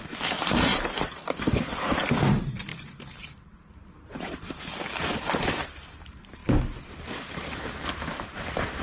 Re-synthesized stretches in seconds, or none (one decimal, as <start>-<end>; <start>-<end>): 0.0-0.7; 2.3-6.4; 6.9-8.8